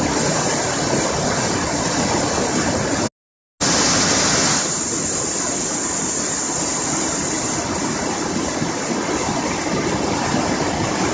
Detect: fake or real real